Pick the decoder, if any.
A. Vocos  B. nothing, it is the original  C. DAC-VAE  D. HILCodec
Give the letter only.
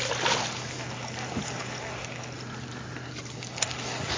B